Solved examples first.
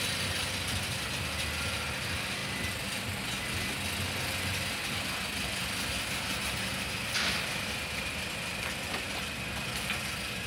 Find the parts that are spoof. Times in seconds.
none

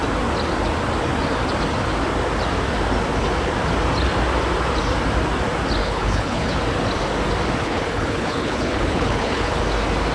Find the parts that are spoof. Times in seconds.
5.8-6.6 (codec, HILCodec); 7.6-9.6

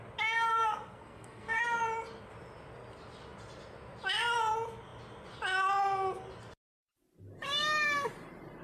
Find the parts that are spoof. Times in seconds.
0.5-1.6 (codec, SNAC)